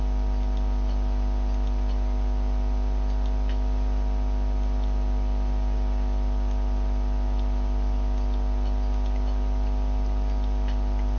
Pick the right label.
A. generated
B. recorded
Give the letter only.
B